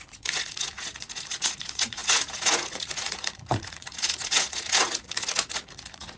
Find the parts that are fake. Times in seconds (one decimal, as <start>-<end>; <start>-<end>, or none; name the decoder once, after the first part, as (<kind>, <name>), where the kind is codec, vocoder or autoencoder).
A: 0.0-6.2 (vocoder, Vocos)